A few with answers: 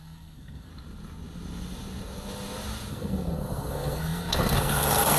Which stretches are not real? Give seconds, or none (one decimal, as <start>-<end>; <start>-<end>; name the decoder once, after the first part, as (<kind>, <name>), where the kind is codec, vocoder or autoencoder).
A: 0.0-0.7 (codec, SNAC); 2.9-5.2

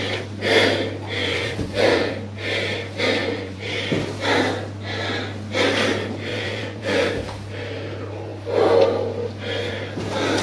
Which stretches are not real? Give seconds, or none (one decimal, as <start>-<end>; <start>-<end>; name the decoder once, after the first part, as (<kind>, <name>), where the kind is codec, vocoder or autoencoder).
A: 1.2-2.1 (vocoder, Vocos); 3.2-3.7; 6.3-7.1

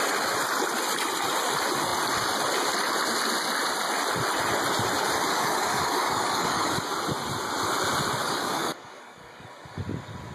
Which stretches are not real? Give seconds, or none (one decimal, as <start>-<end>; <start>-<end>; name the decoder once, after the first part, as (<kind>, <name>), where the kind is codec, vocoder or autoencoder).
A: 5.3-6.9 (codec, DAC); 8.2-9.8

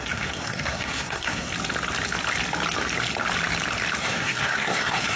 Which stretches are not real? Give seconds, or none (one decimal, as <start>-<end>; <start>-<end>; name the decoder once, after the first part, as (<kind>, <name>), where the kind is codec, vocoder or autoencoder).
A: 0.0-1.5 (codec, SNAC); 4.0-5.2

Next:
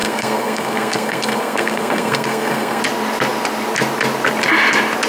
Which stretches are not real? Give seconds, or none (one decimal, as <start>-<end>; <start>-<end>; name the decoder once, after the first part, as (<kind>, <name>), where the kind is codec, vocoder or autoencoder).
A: 0.0-2.8 (codec, SNAC)

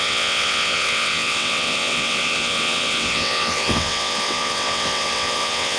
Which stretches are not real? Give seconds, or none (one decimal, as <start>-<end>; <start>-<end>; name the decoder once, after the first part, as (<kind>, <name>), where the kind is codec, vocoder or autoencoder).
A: 0.0-5.8 (vocoder, WaveNeXt)

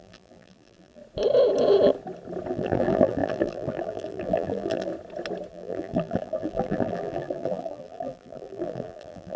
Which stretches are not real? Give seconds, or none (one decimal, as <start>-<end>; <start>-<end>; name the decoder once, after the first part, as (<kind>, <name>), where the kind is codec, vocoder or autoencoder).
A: 0.0-1.0 (vocoder, BigVGAN v2); 2.5-4.9; 5.5-9.4

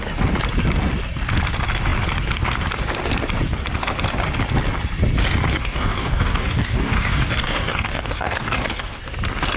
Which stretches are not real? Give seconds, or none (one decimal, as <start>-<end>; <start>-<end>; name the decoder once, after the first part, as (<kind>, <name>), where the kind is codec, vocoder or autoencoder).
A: 5.5-9.0 (codec, DAC)